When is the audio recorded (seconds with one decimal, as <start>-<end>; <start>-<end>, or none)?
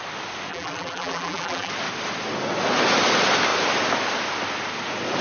0.0-0.5; 1.7-5.2